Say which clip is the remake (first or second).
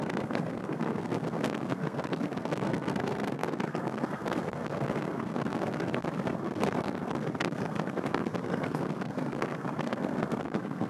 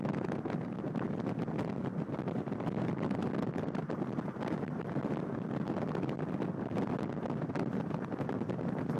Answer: first